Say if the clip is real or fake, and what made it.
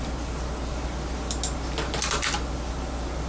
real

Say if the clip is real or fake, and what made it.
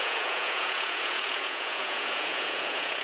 fake, vocoder, Vocos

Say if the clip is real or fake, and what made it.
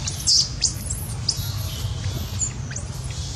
real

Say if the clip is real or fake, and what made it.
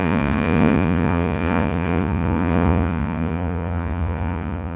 fake, vocoder, Vocos